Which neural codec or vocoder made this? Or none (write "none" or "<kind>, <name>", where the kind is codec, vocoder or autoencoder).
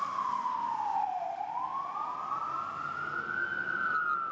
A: none